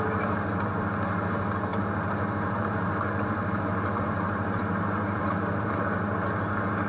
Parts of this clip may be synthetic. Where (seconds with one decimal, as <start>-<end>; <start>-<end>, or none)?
1.7-5.8